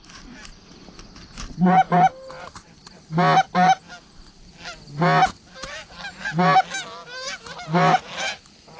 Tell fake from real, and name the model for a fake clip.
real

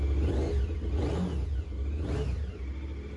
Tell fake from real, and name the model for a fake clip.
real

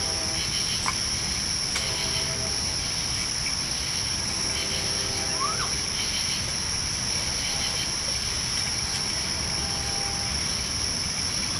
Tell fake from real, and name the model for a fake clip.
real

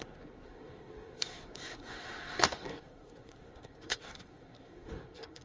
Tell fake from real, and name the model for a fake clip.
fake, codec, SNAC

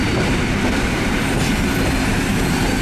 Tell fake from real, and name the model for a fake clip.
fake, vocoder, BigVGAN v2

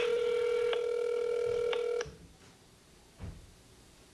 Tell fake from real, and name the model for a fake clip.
real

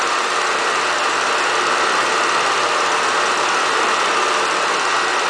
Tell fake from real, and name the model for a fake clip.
real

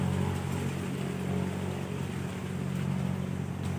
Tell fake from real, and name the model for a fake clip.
real